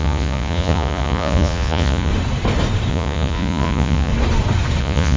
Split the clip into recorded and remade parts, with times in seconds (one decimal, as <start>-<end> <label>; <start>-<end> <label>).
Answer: 0.0-2.1 remade; 2.1-2.9 recorded; 2.9-4.1 remade; 4.1-4.8 recorded; 4.8-5.2 remade

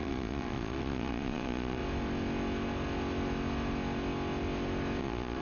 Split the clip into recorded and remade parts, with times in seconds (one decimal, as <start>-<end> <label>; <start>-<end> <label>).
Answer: 0.0-1.8 remade; 1.8-5.0 recorded; 5.0-5.4 remade

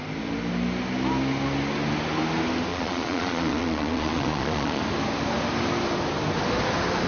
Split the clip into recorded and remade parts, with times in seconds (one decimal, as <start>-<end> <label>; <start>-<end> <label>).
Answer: 0.0-2.7 recorded; 2.7-4.8 remade; 4.8-7.1 recorded

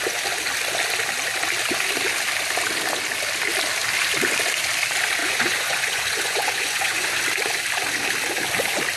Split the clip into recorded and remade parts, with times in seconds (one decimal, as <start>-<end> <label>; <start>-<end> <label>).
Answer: 0.0-5.2 recorded; 5.2-7.2 remade; 7.2-9.0 recorded

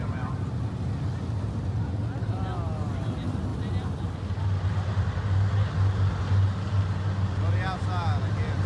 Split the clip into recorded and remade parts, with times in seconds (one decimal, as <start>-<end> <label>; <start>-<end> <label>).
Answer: 0.0-8.7 recorded

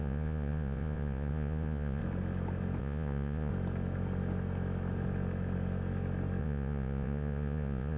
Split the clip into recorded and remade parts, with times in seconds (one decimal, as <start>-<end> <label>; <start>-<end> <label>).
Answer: 0.0-2.0 remade; 2.0-2.8 recorded; 2.8-3.5 remade; 3.5-6.4 recorded; 6.4-8.0 remade